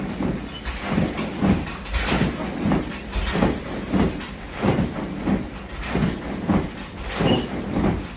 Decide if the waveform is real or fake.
real